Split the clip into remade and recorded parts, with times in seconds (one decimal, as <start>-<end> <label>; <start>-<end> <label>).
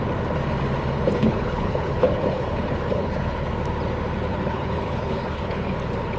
0.0-1.1 recorded; 1.1-3.5 remade; 3.5-4.3 recorded; 4.3-5.7 remade; 5.7-6.2 recorded